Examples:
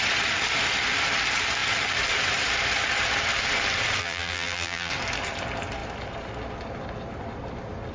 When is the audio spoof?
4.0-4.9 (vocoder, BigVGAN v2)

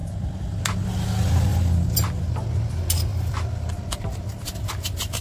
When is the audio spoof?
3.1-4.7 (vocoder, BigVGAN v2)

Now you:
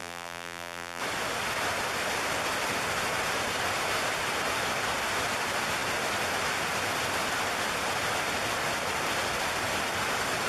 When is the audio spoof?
0.0-1.0 (vocoder, BigVGAN v2)

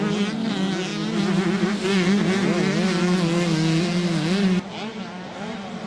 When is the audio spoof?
none

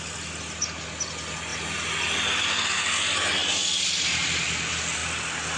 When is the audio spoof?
1.5-2.5 (vocoder, BigVGAN v2)

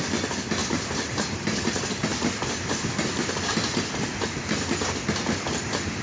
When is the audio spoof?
0.6-1.7 (vocoder, BigVGAN v2)

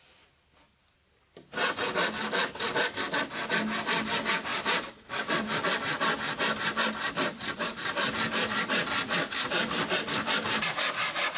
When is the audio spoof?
4.5-6.0 (vocoder, BigVGAN v2); 7.3-10.8

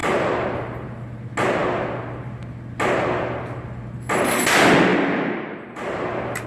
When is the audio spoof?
0.0-1.2 (vocoder, BigVGAN v2)